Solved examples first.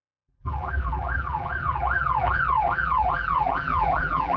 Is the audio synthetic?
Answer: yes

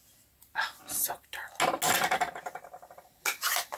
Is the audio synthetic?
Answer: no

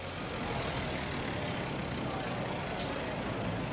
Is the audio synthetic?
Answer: no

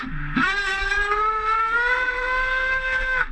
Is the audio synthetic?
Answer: yes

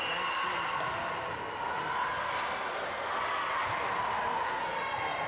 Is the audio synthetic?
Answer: no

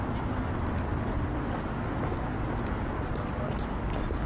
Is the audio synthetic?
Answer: no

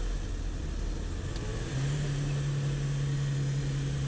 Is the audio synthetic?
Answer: no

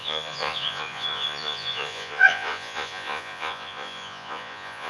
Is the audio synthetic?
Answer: yes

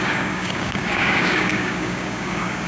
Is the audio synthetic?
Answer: yes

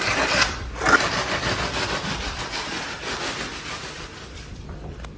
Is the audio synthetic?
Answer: yes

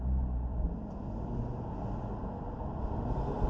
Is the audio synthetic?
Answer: yes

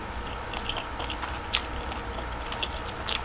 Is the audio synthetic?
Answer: no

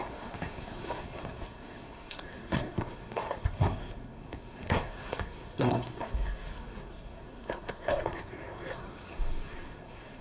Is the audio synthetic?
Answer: yes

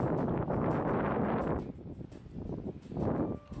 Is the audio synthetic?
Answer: no